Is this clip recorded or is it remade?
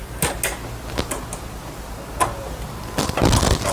recorded